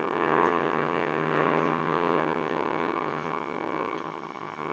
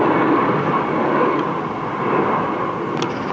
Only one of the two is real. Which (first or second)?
second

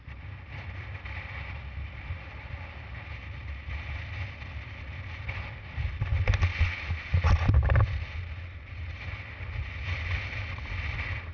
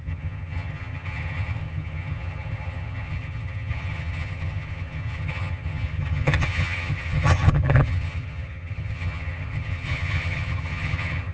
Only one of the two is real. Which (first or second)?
first